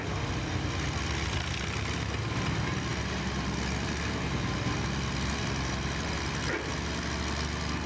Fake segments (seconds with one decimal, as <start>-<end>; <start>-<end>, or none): none